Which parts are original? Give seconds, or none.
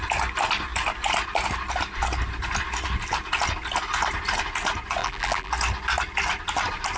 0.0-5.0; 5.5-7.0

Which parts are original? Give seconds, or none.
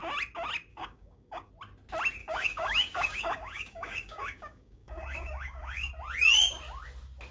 0.0-0.7; 1.5-2.2; 5.9-7.3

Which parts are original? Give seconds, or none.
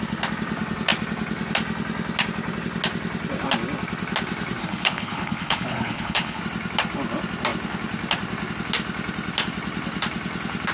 0.0-4.6; 6.4-10.7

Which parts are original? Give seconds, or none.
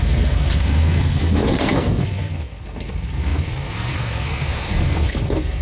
none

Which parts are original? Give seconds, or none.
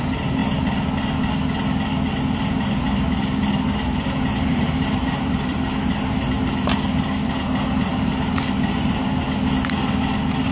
0.4-2.2; 9.1-10.5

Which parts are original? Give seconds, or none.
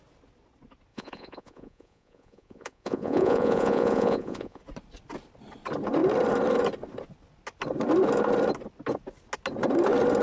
0.0-0.9; 4.6-10.2